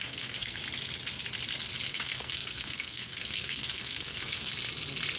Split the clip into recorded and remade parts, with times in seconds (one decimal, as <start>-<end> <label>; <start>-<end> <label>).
0.0-0.6 remade; 0.6-1.9 recorded; 1.9-4.5 remade; 4.5-5.2 recorded